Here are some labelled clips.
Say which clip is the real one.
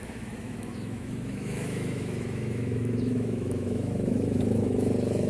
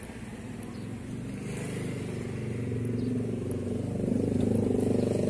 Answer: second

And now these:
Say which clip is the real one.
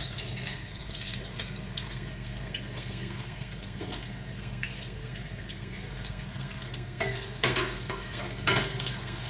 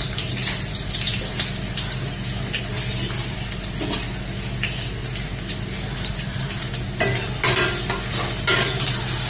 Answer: second